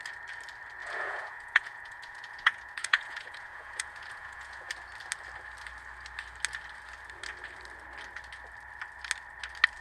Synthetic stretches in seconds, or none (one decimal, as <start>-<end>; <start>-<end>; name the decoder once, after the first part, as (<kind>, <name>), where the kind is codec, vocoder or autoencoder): 0.8-4.7 (vocoder, Vocos)

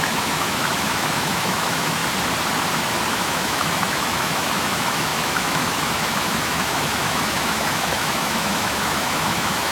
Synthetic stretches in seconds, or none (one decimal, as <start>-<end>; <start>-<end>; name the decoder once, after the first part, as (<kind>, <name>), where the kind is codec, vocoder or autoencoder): 0.0-2.0 (autoencoder, DAC-VAE); 3.1-9.7

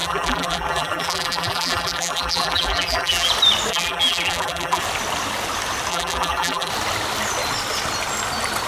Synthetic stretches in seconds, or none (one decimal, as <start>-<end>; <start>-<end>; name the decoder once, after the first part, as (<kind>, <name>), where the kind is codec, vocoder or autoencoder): 0.0-3.3 (vocoder, BigVGAN v2); 3.7-4.8; 5.9-6.7